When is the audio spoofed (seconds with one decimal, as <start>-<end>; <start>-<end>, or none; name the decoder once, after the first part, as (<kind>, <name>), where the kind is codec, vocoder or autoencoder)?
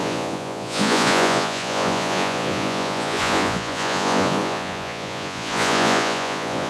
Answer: 0.0-6.7 (vocoder, Vocos)